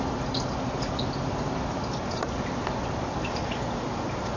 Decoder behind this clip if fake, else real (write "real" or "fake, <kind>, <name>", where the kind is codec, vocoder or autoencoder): real